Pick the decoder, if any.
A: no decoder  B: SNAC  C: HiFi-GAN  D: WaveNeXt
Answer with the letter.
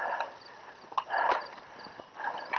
A